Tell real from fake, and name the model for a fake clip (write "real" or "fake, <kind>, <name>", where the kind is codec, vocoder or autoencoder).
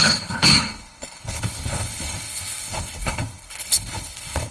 fake, codec, HILCodec